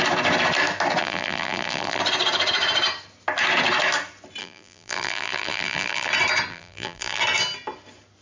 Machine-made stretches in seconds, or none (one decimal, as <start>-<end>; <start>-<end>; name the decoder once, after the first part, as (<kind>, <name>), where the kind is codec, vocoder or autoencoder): 1.0-2.0 (vocoder, BigVGAN v2); 4.4-6.1; 6.5-7.2